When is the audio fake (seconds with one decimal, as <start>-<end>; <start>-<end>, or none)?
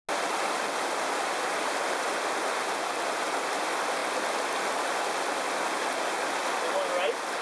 none